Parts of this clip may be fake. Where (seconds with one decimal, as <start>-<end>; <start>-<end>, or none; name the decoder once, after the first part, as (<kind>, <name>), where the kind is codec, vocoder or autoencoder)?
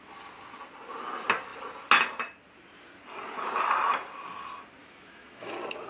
4.8-5.5 (autoencoder, DAC-VAE)